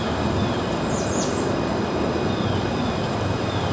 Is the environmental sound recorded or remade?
remade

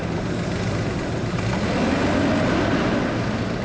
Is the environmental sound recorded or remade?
recorded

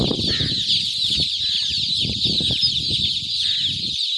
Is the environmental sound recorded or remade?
remade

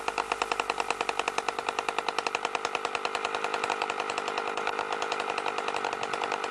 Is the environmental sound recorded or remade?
recorded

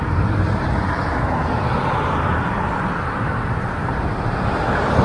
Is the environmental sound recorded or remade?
remade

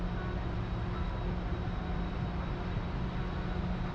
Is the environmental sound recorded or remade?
recorded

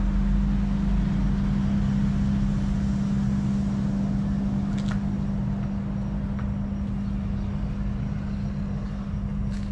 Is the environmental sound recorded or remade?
recorded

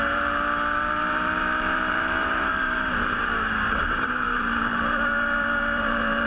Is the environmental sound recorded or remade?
remade